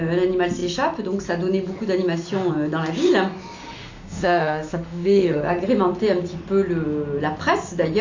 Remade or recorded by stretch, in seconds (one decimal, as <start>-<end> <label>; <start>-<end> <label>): 0.0-3.6 recorded; 3.6-5.4 remade; 5.4-8.0 recorded